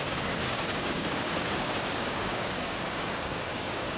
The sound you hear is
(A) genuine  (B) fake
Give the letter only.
B